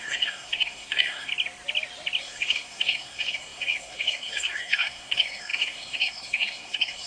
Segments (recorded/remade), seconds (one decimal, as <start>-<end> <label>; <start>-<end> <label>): 0.0-1.3 remade; 1.3-2.2 recorded; 2.2-7.1 remade